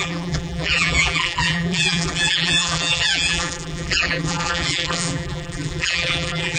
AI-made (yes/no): yes